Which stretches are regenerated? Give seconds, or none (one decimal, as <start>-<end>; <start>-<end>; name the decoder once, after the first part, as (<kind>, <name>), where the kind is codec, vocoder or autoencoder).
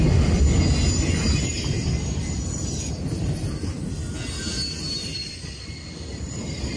5.2-6.8 (vocoder, BigVGAN v2)